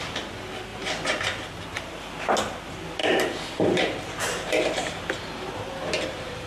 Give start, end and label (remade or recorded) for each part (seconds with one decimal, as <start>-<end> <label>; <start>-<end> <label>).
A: 0.0-0.7 recorded; 0.7-1.2 remade; 1.2-3.0 recorded; 3.0-6.5 remade